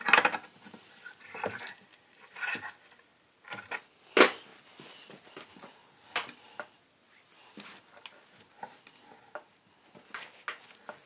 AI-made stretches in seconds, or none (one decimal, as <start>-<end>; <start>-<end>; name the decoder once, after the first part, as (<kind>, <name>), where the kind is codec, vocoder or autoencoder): none